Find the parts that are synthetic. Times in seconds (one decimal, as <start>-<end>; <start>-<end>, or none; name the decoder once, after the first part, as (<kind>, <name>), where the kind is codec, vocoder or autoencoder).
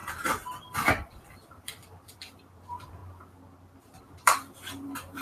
1.6-3.0 (vocoder, BigVGAN v2); 4.0-5.2